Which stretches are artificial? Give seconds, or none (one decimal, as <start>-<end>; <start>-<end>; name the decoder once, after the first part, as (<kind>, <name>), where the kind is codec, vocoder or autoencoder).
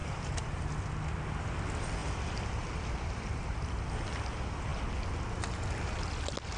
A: 0.0-0.6 (vocoder, BigVGAN v2)